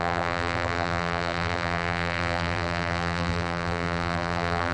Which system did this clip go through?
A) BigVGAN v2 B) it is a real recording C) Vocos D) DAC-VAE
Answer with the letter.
A